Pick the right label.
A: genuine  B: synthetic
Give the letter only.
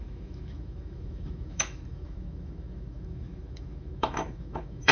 B